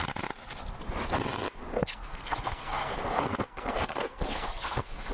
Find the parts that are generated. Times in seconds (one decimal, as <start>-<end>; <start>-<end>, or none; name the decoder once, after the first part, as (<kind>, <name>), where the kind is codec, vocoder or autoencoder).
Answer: 1.7-5.1 (codec, SNAC)